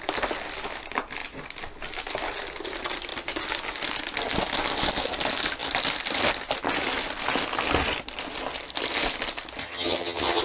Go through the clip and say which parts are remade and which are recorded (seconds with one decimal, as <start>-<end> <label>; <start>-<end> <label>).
0.0-9.6 recorded; 9.6-10.4 remade